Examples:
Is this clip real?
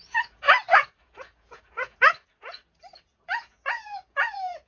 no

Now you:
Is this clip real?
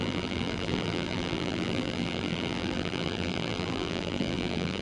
no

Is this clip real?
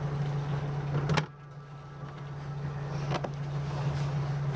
yes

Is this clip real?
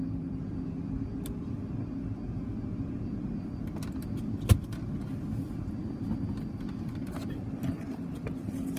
yes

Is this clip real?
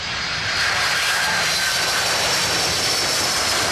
no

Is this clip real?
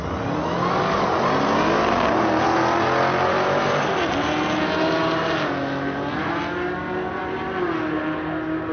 yes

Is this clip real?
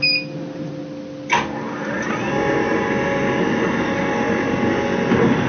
yes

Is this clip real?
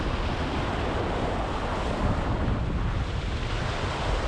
yes